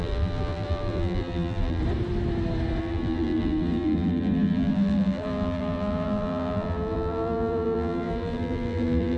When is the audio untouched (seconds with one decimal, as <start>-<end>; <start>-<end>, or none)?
1.8-2.8